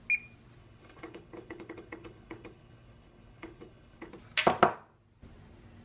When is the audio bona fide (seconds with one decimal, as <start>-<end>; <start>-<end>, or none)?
0.0-0.6; 4.1-5.8